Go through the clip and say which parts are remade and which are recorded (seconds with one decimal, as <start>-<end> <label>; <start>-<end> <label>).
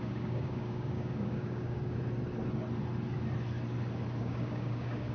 0.0-2.0 remade; 2.0-4.2 recorded; 4.2-5.1 remade